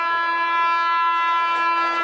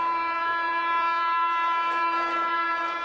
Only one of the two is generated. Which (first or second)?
second